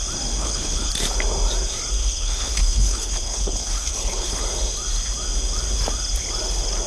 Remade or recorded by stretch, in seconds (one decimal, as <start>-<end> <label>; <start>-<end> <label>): 0.0-0.4 recorded; 0.4-0.9 remade; 0.9-2.0 recorded; 2.0-4.4 remade; 4.4-6.9 recorded